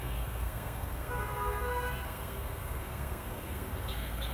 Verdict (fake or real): fake